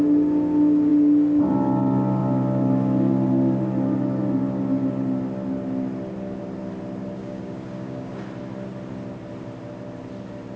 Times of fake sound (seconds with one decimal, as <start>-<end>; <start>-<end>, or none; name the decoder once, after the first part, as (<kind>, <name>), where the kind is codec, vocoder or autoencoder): 7.2-8.2 (codec, DAC)